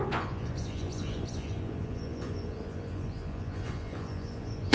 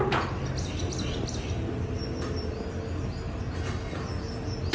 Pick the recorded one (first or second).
second